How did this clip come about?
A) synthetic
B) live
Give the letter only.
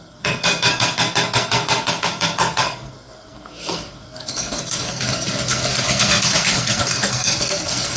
A